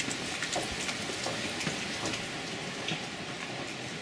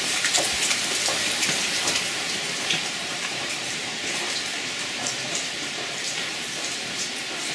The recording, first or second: first